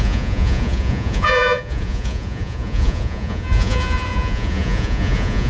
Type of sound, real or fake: fake